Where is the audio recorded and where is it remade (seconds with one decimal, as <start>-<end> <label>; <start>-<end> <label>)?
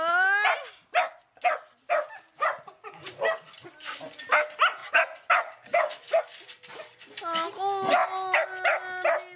0.0-9.4 recorded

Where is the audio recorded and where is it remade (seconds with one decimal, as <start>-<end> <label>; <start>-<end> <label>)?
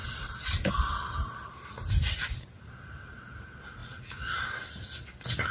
0.0-5.5 recorded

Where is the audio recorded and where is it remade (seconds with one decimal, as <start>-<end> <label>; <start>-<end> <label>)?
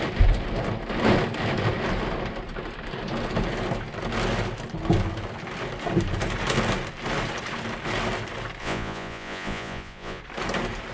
0.0-8.6 recorded; 8.6-10.2 remade; 10.2-10.9 recorded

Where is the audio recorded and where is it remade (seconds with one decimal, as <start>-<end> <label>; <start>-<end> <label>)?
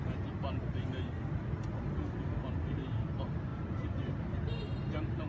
0.0-3.5 recorded; 3.5-4.1 remade; 4.1-5.3 recorded